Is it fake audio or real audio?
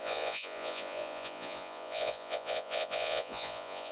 fake